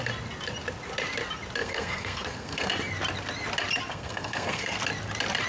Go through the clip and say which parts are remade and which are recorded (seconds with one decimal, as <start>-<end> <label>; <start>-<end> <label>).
0.0-1.6 recorded; 1.6-2.7 remade; 2.7-3.9 recorded; 3.9-4.8 remade; 4.8-5.5 recorded